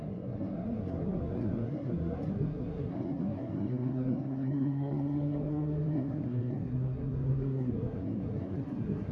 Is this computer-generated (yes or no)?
yes